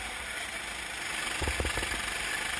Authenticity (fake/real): real